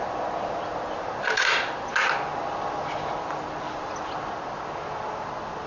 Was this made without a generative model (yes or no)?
yes